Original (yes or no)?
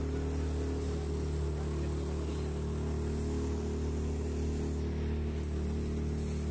yes